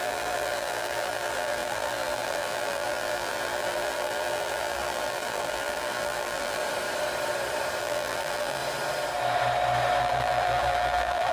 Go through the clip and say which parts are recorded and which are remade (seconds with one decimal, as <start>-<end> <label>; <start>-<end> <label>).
0.0-6.6 remade; 6.6-7.8 recorded; 7.8-8.6 remade; 8.6-10.0 recorded; 10.0-11.3 remade